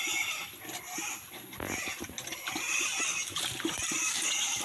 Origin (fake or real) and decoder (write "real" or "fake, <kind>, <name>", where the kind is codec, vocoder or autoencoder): real